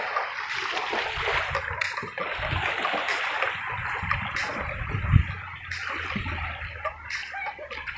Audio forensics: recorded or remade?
recorded